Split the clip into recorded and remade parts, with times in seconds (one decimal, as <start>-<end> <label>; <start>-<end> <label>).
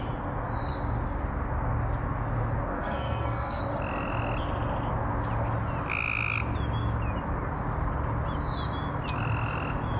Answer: 0.0-2.7 recorded; 2.7-3.6 remade; 3.6-10.0 recorded